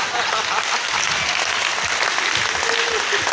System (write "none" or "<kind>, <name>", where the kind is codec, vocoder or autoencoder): none